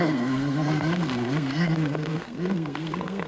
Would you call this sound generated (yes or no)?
yes